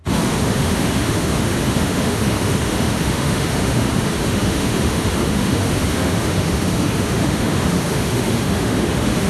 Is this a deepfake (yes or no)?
yes